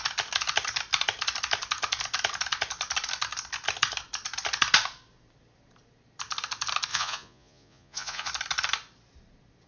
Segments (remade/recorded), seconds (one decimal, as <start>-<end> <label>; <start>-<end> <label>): 0.0-6.9 recorded; 6.9-8.3 remade; 8.3-9.7 recorded